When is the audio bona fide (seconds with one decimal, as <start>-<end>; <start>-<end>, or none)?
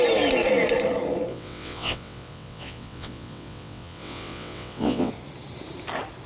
0.0-1.3; 5.1-6.3